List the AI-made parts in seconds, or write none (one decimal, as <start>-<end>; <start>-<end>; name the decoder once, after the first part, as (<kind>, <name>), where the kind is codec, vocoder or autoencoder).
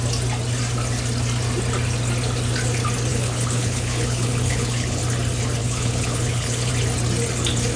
3.1-5.0 (codec, HILCodec); 5.6-6.7